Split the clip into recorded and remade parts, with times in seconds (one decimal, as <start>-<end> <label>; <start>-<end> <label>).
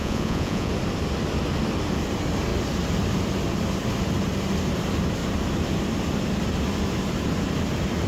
0.0-0.7 remade; 0.7-8.1 recorded